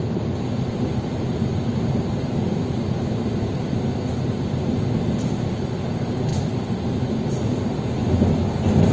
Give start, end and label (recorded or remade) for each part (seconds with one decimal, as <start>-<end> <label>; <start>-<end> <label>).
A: 0.0-8.9 recorded